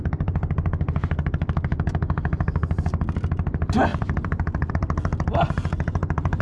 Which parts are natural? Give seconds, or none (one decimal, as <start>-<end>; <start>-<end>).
0.0-3.9; 4.7-6.4